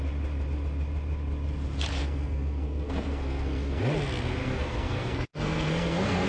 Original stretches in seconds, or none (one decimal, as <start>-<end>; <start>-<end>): 0.0-2.0; 3.8-4.4